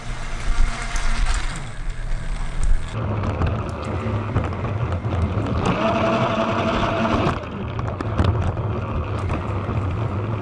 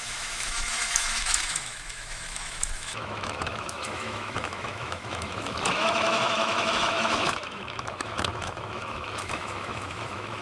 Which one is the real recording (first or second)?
first